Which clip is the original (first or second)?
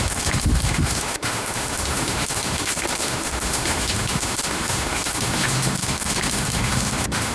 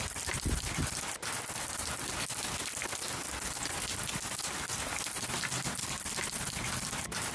second